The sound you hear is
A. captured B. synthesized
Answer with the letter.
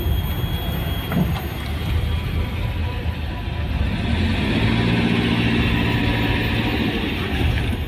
A